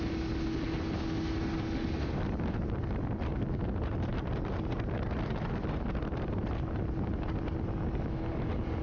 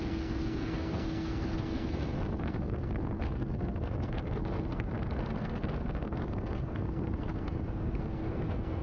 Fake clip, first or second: second